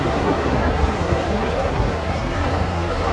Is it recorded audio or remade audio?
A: remade